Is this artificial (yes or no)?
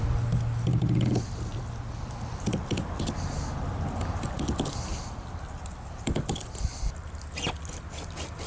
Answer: no